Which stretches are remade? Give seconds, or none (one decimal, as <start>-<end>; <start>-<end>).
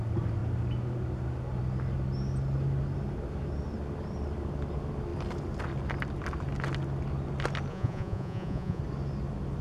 7.7-8.8